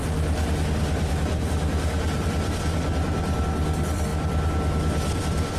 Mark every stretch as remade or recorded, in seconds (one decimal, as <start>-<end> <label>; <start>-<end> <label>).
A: 0.0-3.4 remade; 3.4-4.1 recorded; 4.1-5.6 remade